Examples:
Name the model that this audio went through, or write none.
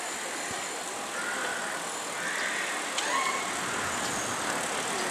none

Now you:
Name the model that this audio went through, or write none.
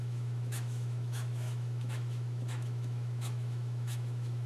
autoencoder, DAC-VAE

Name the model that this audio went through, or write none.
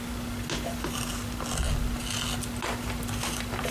none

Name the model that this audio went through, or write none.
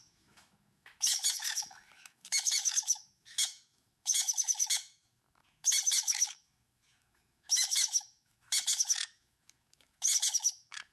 autoencoder, DAC-VAE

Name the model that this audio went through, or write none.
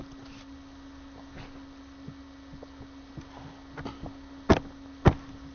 none